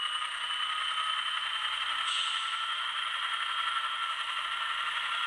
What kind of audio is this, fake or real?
fake